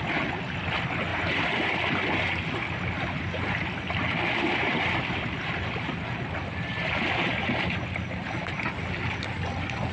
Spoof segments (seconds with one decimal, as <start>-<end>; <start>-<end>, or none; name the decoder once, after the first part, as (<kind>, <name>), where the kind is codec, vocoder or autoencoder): none